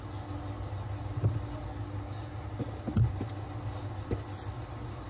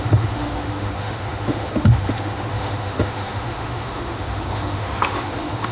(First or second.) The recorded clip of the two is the first